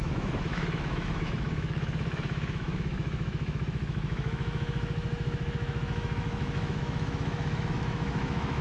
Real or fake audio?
fake